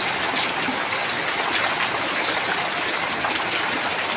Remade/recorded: recorded